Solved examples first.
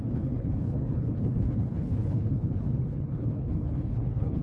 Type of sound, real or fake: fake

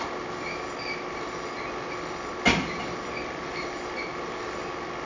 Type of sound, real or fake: real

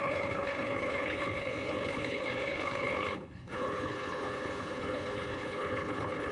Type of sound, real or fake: fake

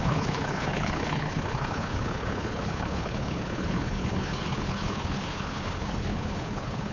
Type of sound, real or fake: fake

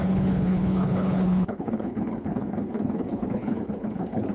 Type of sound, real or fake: fake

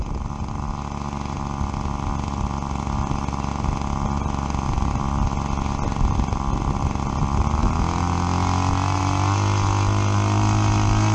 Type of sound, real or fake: real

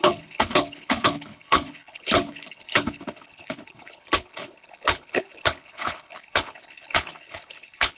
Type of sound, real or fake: fake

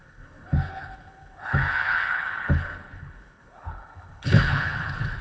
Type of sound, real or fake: fake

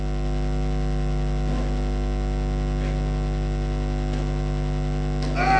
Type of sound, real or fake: real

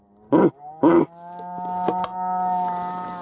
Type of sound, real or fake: real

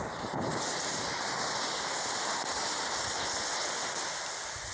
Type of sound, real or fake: real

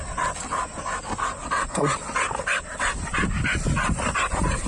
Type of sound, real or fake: real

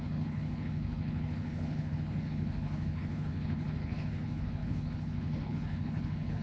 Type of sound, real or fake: fake